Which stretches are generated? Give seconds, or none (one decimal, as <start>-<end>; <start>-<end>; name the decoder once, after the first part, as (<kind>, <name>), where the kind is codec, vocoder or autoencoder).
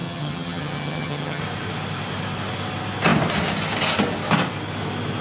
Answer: 0.0-1.4 (vocoder, HiFi-GAN)